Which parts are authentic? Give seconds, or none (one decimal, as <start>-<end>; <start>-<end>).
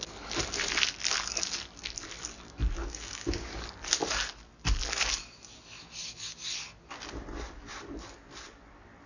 0.0-2.8; 3.6-9.1